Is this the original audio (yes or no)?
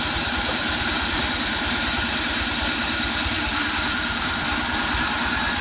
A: no